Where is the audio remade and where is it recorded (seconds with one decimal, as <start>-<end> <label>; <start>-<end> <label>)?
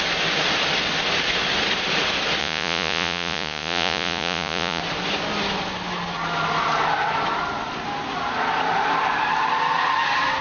0.0-2.4 recorded; 2.4-4.8 remade; 4.8-10.4 recorded